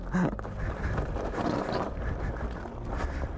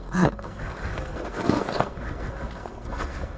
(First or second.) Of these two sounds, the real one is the first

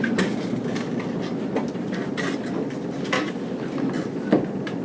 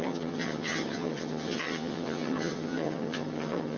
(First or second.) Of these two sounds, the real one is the first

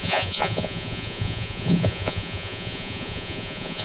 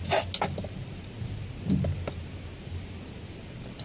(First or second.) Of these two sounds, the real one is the second